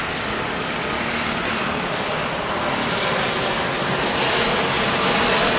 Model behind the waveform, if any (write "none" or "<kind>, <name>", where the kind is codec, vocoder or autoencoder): none